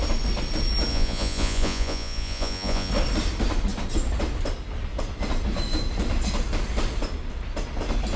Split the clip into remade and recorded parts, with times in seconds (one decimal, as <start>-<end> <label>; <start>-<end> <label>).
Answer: 0.0-0.9 recorded; 0.9-2.9 remade; 2.9-8.2 recorded